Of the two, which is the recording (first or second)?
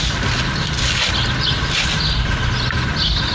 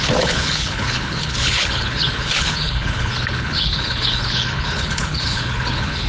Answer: first